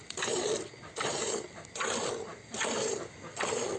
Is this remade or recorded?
remade